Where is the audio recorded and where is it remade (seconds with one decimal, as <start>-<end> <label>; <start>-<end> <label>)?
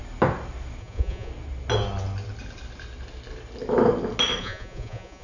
0.0-0.8 recorded; 0.8-1.3 remade; 1.3-4.4 recorded; 4.4-5.2 remade